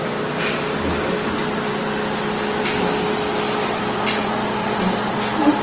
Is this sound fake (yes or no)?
no